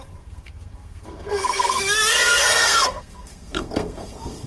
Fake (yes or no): yes